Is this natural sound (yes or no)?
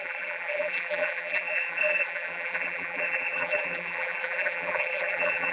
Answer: no